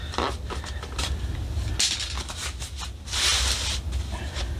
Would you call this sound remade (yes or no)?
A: no